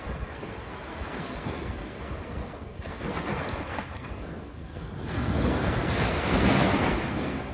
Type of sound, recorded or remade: remade